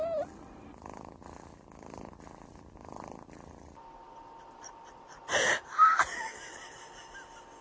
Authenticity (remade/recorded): recorded